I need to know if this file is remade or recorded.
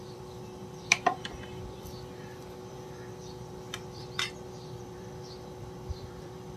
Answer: remade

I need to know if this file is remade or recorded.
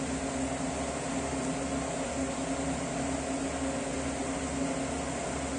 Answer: recorded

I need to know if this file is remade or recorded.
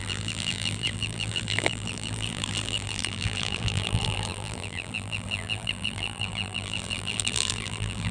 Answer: remade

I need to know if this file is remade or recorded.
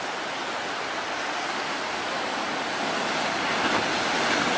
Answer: recorded